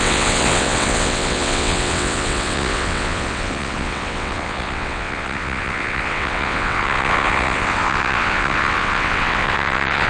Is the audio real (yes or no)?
no